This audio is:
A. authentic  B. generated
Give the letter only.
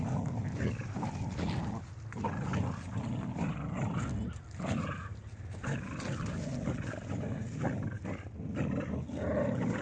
A